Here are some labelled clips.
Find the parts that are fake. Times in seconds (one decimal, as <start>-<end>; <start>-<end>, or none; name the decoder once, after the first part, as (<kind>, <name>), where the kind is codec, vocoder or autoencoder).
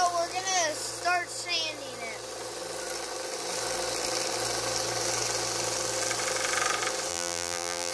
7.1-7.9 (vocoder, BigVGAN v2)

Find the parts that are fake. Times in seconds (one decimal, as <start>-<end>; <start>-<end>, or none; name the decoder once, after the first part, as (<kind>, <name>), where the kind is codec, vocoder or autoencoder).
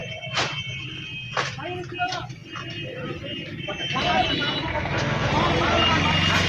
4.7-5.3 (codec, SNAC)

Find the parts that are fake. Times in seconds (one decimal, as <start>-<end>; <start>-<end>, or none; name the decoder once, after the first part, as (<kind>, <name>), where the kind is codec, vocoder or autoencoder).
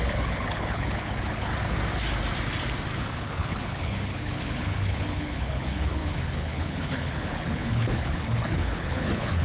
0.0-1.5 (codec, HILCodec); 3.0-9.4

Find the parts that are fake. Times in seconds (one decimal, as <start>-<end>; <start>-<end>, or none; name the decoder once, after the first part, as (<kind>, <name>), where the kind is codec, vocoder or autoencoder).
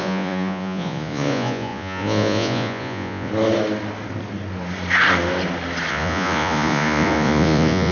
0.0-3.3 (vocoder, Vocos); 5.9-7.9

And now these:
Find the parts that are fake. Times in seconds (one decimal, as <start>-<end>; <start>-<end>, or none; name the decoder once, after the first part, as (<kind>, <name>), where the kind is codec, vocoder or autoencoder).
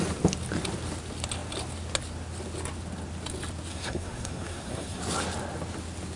3.7-5.0 (codec, SNAC)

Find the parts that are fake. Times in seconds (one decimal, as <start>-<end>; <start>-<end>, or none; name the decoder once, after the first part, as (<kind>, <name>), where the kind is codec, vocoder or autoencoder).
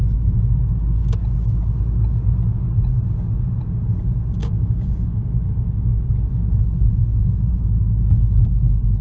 0.0-0.6 (codec, DAC); 4.4-6.1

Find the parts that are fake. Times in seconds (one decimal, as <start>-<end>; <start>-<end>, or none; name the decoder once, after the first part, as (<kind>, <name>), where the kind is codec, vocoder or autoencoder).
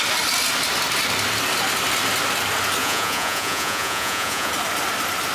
2.8-4.5 (vocoder, Vocos)